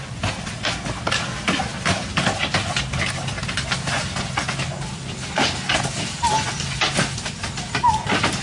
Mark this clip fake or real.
real